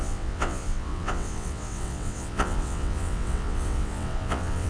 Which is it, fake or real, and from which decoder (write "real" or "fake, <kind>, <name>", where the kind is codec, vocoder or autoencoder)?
fake, vocoder, WaveNeXt